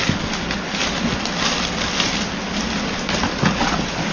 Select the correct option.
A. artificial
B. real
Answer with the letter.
B